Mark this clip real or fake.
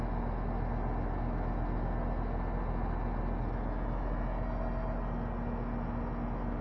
real